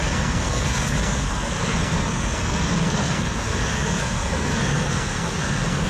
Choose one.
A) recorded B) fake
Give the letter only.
B